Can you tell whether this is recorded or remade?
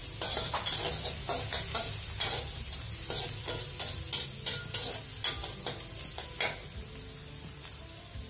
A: recorded